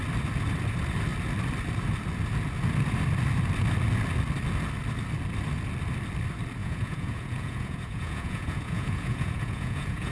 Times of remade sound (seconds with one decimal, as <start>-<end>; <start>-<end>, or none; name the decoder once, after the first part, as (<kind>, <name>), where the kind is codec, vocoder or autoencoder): 6.6-10.1 (vocoder, Vocos)